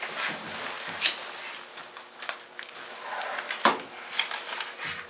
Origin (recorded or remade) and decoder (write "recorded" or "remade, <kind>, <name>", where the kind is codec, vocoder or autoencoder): recorded